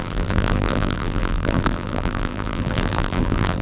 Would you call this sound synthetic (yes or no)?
yes